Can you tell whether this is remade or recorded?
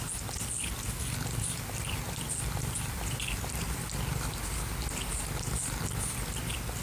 recorded